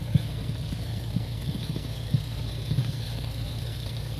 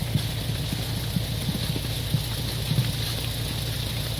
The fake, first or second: first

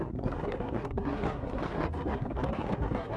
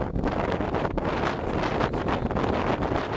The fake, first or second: first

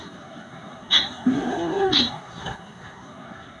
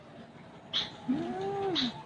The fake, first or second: first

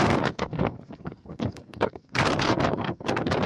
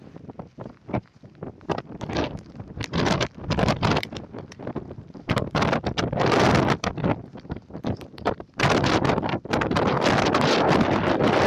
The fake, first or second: first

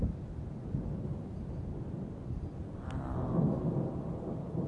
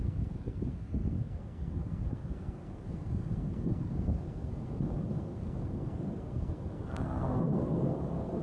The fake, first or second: second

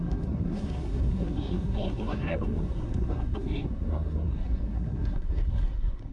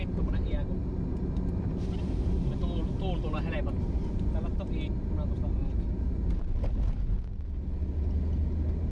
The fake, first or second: first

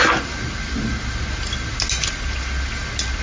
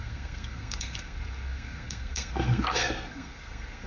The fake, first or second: second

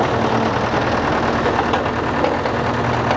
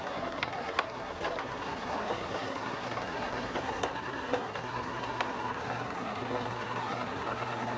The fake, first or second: second